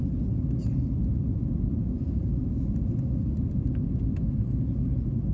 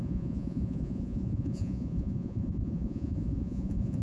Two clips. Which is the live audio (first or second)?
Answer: first